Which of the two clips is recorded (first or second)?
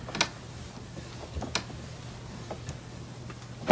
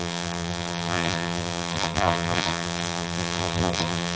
first